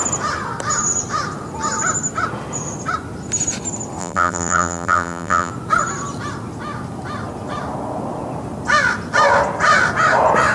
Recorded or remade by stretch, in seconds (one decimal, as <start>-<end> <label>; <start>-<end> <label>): 0.0-4.0 recorded; 4.0-5.5 remade; 5.5-10.5 recorded